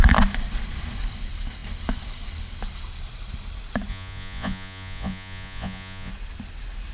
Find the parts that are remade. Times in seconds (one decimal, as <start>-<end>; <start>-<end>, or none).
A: 3.9-6.1